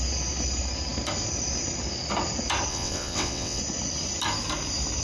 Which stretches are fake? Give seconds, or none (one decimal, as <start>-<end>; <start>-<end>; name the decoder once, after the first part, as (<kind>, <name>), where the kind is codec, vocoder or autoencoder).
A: 2.7-3.6 (vocoder, WaveNeXt)